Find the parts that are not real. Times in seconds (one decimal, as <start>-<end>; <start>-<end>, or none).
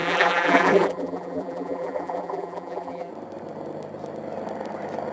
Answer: 0.0-3.1